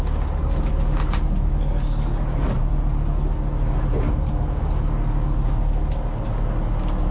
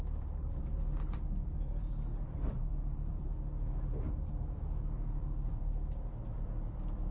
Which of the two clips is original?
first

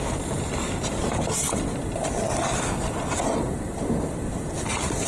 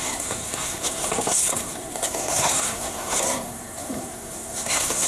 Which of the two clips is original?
first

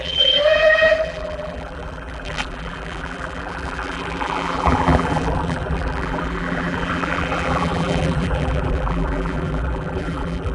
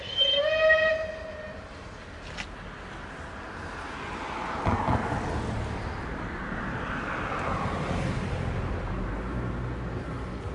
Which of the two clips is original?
second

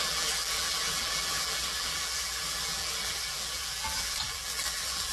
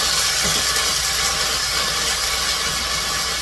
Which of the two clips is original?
second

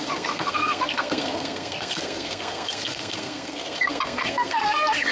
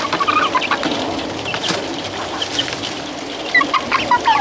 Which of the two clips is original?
second